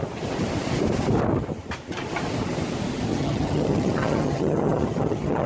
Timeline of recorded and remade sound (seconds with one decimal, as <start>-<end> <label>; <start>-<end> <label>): 0.0-3.1 recorded; 3.1-5.5 remade